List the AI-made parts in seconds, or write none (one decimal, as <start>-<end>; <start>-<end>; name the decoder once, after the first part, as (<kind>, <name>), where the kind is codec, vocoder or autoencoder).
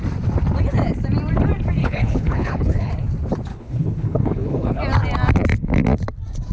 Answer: 1.8-2.9 (codec, HILCodec); 3.5-4.8